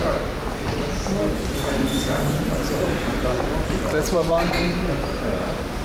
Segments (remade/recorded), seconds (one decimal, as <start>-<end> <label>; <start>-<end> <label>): 0.0-1.9 recorded; 1.9-4.9 remade; 4.9-5.8 recorded